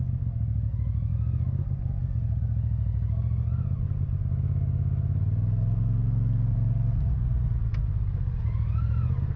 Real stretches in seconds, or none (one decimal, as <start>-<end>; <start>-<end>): 0.0-9.4